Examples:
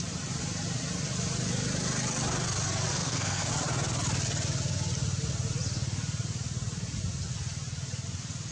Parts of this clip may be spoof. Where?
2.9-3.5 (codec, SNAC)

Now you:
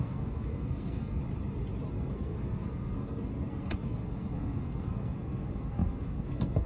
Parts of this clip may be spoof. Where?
0.0-1.2 (codec, SNAC); 1.9-6.7

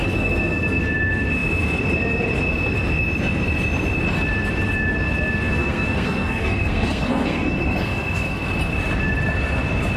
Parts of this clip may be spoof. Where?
0.0-0.8 (codec, SNAC); 5.5-8.4

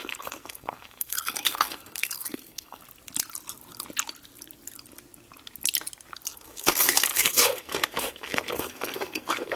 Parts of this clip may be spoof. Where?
0.0-2.8 (codec, SNAC); 6.3-9.6

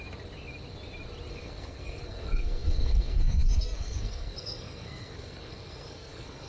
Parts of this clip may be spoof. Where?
1.3-6.5 (codec, SNAC)

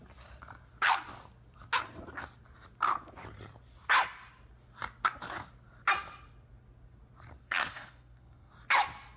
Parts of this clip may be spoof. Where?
7.4-8.5 (codec, SNAC)

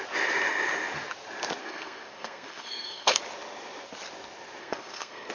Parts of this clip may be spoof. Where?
1.6-3.2 (codec, SNAC); 4.6-5.3

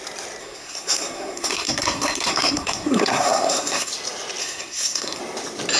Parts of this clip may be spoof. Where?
0.4-3.9 (codec, SNAC); 4.4-5.2